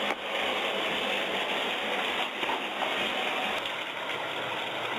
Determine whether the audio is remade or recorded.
recorded